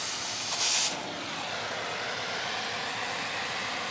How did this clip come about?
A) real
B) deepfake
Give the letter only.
A